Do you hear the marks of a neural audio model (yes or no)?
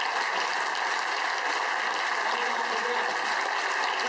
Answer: no